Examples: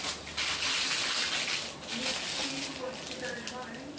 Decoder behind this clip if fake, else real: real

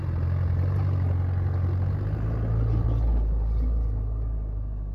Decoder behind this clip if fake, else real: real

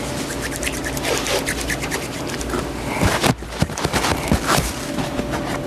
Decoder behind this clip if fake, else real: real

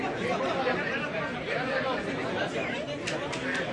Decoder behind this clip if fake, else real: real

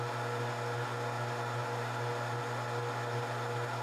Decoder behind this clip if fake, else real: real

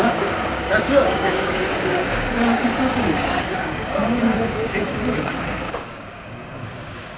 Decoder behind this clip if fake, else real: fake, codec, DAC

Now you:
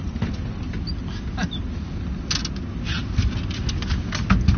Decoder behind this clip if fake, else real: real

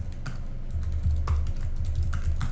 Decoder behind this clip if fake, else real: real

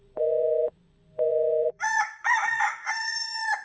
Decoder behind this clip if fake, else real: fake, vocoder, Vocos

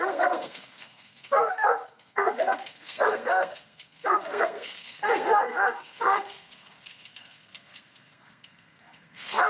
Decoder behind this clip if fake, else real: fake, codec, SNAC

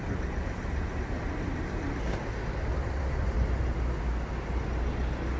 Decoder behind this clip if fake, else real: real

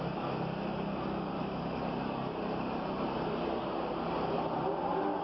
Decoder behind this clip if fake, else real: real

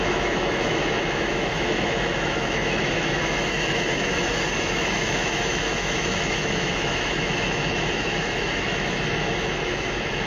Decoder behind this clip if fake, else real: fake, autoencoder, DAC-VAE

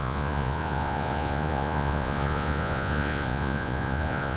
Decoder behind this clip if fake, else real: fake, vocoder, Vocos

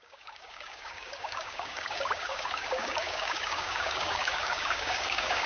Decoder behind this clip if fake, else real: fake, codec, DAC